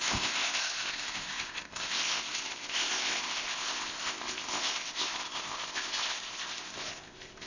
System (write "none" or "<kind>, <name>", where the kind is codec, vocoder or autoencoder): codec, ZipCodec